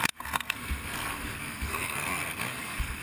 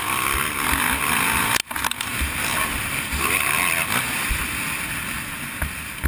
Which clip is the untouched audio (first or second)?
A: second